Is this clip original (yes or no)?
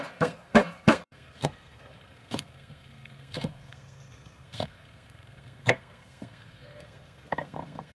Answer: no